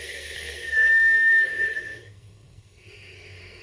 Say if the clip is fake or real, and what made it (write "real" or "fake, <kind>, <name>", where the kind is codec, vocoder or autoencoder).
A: fake, codec, SNAC